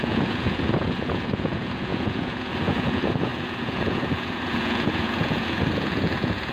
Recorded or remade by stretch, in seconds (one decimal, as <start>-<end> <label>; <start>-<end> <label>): 0.0-6.5 remade